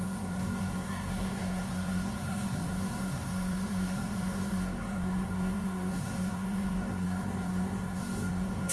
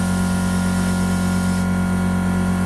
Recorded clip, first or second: second